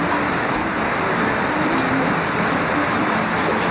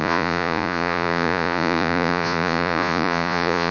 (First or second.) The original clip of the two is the first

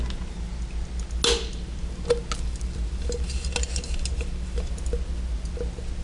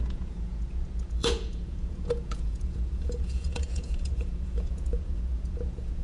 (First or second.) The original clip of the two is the first